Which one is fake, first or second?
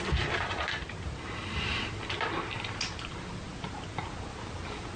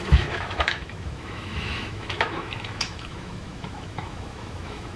second